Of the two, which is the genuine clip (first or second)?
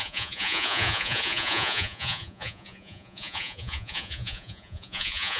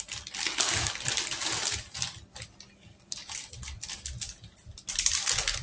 second